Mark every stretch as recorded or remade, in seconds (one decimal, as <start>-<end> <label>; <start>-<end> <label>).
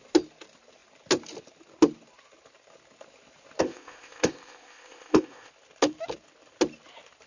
0.0-3.6 recorded; 3.6-5.5 remade; 5.5-7.3 recorded